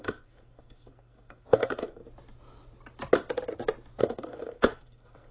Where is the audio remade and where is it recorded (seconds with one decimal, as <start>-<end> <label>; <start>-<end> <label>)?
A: 0.0-2.0 remade; 2.0-4.0 recorded; 4.0-5.3 remade